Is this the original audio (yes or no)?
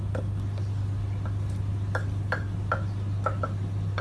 yes